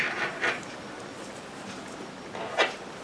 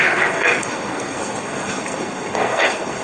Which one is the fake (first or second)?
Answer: second